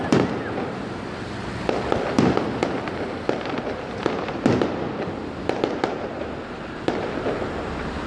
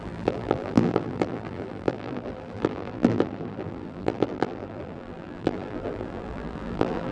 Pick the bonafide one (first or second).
first